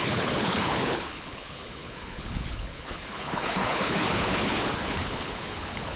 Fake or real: fake